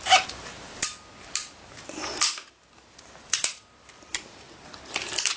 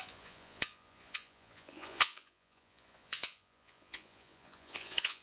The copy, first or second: second